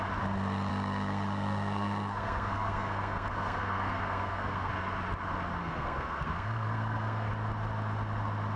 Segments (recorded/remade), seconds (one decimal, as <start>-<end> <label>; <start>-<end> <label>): 0.0-0.7 recorded; 0.7-4.7 remade; 4.7-5.6 recorded; 5.6-7.3 remade; 7.3-8.6 recorded